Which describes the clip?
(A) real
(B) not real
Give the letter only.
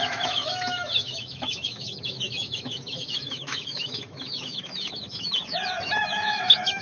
B